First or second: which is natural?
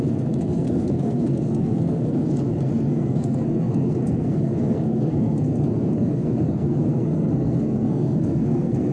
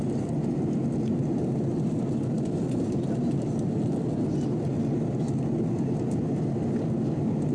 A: second